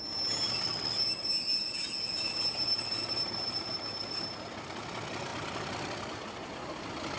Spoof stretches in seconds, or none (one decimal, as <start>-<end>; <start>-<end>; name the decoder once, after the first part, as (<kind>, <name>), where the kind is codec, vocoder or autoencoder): none